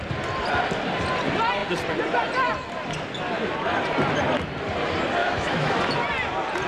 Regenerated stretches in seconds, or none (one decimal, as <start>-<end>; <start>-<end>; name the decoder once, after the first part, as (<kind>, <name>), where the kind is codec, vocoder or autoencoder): 5.2-5.8 (autoencoder, DAC-VAE)